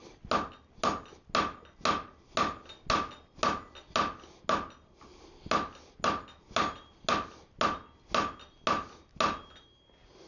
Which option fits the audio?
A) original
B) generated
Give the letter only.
A